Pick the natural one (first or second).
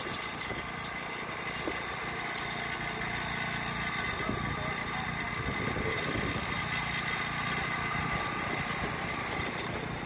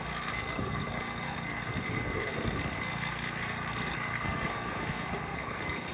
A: first